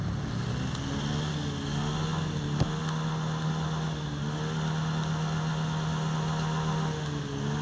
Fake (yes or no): no